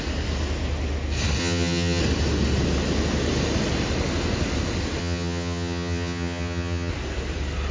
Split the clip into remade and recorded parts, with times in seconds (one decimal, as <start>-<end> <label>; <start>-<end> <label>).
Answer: 0.0-1.4 recorded; 1.4-2.0 remade; 2.0-5.0 recorded; 5.0-6.9 remade; 6.9-7.7 recorded